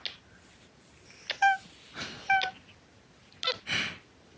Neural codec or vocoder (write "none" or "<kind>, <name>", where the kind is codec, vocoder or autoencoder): none